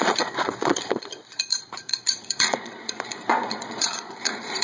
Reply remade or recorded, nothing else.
remade